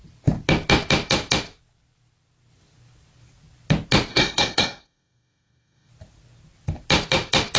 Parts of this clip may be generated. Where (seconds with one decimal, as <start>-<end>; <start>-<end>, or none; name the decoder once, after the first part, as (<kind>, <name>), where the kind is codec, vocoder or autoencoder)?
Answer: 4.1-5.9 (codec, SNAC)